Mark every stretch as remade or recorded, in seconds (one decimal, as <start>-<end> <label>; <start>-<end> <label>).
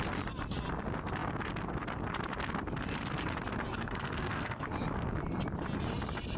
0.0-3.7 recorded; 3.7-4.7 remade; 4.7-6.4 recorded